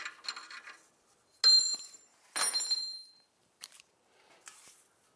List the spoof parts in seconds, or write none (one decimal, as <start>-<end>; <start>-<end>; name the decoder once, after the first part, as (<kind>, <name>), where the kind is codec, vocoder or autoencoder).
1.7-4.4 (vocoder, BigVGAN v2)